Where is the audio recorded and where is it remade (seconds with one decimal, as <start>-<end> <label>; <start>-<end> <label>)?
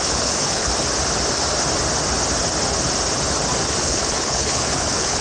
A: 0.0-0.7 remade; 0.7-3.8 recorded; 3.8-5.2 remade